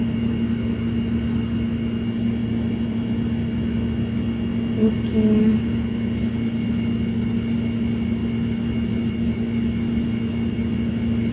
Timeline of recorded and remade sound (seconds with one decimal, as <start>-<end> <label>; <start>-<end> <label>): 0.0-11.3 recorded